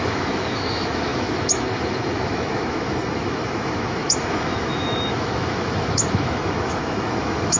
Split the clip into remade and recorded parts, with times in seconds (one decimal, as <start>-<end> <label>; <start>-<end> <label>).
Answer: 0.0-7.6 remade